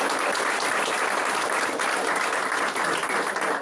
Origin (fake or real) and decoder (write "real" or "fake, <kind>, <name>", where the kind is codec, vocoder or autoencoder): real